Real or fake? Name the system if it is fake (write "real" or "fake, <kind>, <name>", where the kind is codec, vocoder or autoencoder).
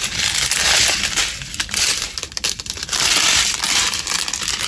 real